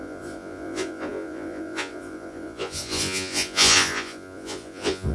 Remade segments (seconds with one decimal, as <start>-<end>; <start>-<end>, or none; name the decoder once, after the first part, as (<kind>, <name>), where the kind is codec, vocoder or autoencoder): 0.0-5.1 (vocoder, Vocos)